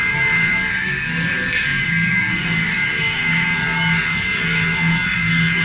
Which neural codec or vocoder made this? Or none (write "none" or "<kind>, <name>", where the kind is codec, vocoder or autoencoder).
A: codec, DAC